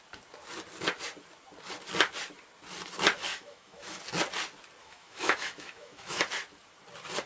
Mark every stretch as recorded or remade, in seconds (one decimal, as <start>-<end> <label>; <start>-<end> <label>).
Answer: 0.0-3.3 recorded; 3.3-4.0 remade; 4.0-4.8 recorded; 4.8-6.2 remade; 6.2-7.3 recorded